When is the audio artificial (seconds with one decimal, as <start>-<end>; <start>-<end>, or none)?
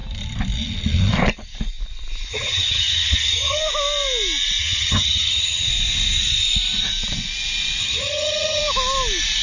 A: 2.3-3.6; 4.6-5.7; 7.8-8.6